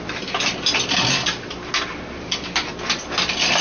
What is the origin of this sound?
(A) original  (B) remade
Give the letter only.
A